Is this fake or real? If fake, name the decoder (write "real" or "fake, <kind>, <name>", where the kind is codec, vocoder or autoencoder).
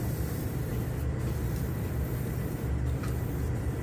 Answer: fake, vocoder, BigVGAN v2